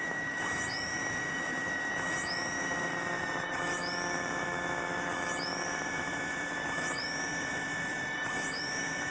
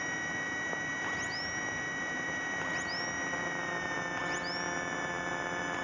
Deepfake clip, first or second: first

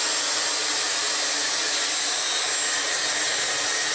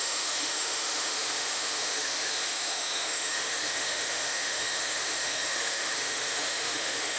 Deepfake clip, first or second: second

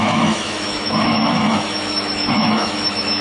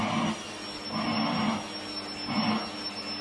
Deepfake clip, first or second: first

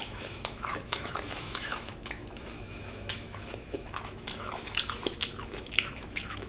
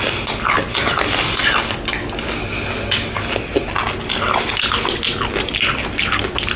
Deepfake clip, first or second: first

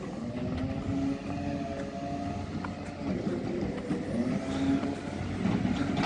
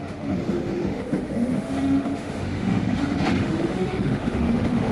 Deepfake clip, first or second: second